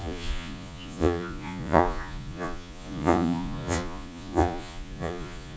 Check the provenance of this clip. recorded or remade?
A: remade